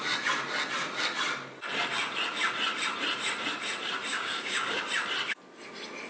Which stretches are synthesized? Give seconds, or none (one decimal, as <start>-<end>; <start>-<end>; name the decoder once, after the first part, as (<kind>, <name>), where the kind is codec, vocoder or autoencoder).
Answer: 4.1-4.8 (codec, DAC)